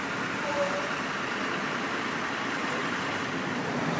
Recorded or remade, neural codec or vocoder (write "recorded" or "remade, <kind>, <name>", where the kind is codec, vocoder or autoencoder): recorded